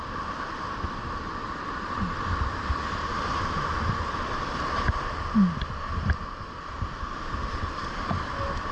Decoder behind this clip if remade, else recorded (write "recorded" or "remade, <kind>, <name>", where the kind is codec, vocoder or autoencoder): recorded